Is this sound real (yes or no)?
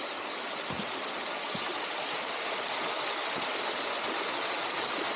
yes